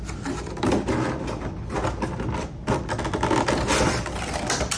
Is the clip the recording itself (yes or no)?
yes